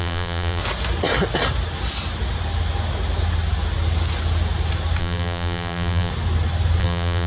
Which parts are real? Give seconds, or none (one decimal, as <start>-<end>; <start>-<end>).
0.6-5.0; 6.1-6.8

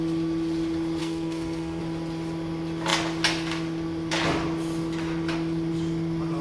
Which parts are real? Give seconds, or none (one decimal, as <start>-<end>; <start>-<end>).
0.0-1.0; 1.8-6.4

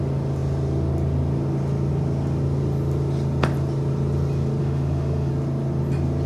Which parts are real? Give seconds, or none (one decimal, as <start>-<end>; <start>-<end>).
0.0-4.6; 5.3-6.3

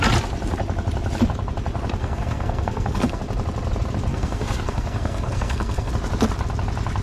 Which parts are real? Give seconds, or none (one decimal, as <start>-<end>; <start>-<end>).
0.0-2.0; 3.2-4.1; 5.9-7.0